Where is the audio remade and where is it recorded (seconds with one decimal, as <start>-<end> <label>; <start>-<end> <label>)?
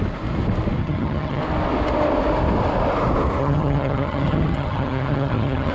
0.0-0.8 recorded; 0.8-1.4 remade; 1.4-3.4 recorded; 3.4-5.7 remade